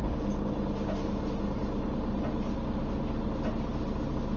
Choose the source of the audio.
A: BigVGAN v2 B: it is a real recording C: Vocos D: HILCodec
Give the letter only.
B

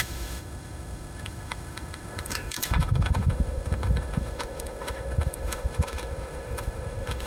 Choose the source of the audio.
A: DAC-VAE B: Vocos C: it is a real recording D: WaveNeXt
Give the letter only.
A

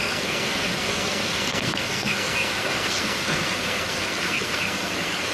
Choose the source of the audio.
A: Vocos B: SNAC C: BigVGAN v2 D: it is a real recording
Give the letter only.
B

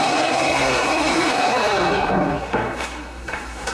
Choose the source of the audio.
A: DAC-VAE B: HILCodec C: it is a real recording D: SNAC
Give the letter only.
D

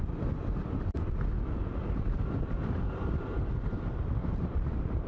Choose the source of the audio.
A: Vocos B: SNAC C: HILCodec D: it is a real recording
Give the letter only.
D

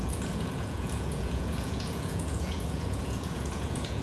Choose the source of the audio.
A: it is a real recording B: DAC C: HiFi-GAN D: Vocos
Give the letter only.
D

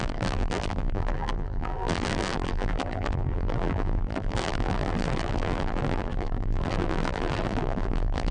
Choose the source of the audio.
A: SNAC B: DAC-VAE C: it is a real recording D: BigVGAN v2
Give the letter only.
D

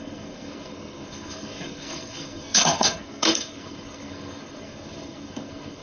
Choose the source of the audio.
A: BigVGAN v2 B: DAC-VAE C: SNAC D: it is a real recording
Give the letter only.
C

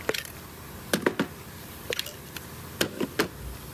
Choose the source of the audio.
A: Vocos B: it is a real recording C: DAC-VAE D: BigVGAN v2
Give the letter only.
B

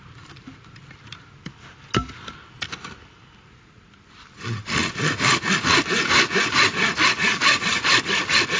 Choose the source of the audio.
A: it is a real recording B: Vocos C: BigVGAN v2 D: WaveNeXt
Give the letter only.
A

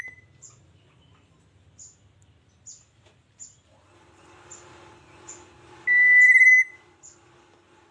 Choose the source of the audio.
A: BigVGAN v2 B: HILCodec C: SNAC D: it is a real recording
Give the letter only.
D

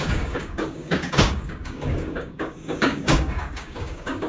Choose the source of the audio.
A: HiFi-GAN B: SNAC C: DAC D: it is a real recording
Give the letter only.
C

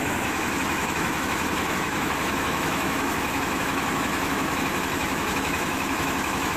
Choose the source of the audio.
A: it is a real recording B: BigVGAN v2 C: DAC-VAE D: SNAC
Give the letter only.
C